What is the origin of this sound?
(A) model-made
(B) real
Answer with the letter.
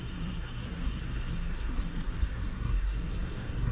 A